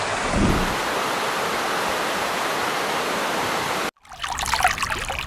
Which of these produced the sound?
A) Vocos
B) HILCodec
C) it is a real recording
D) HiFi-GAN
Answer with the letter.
C